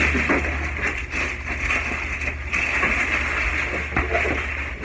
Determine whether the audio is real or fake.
real